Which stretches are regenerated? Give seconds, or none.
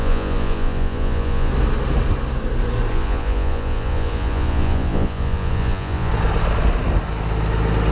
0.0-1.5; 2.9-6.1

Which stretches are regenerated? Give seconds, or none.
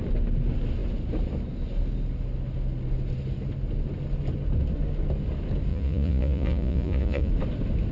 5.7-7.3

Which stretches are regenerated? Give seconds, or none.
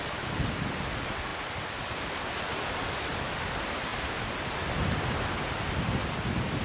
none